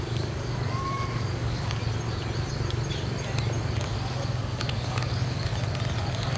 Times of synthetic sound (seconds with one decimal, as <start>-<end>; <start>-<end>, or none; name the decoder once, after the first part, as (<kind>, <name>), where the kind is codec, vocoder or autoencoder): 0.0-1.8 (codec, DAC); 3.7-5.5; 6.0-6.4